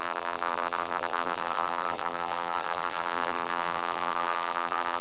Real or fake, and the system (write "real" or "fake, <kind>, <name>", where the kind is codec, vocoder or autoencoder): fake, vocoder, BigVGAN v2